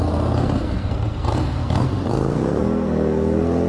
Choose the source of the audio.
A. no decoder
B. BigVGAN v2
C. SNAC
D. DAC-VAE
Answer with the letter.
C